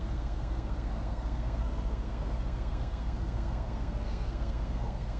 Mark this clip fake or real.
fake